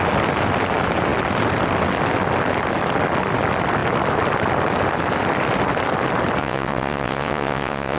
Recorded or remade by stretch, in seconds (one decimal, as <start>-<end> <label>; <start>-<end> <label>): 0.0-6.4 recorded; 6.4-8.0 remade